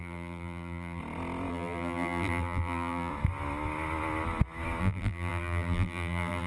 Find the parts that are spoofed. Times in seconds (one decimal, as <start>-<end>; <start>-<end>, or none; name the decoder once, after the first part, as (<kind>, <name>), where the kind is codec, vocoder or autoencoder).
0.0-1.0 (vocoder, BigVGAN v2); 1.5-3.1; 4.8-6.5